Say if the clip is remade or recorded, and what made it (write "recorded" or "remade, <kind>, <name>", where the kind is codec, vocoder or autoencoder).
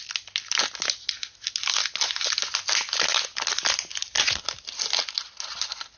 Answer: recorded